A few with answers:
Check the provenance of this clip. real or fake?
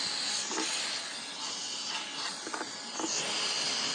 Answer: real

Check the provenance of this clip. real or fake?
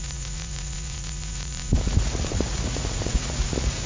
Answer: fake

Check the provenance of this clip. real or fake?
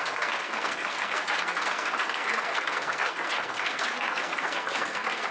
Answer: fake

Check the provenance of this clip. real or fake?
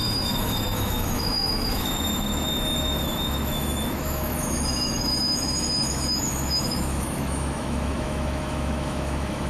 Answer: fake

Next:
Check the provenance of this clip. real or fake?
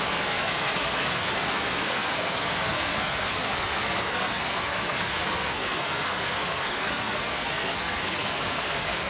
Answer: fake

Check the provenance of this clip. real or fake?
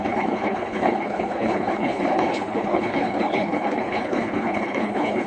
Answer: fake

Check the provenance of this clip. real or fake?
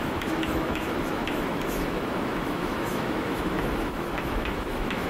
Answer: fake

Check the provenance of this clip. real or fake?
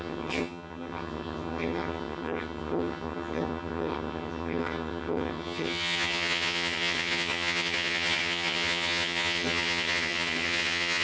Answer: fake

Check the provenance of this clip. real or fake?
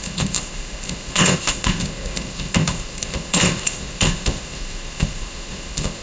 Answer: fake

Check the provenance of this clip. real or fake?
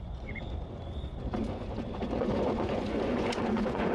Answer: fake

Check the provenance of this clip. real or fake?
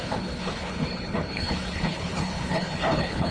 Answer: fake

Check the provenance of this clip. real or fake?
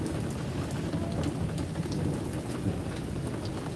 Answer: real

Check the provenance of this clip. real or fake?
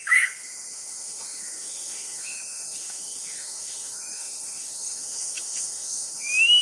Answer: fake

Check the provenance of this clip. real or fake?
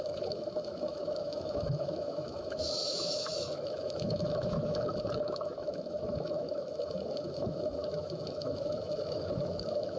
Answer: fake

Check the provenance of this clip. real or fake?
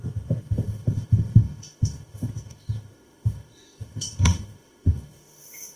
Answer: fake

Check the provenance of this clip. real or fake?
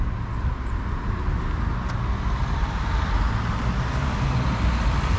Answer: real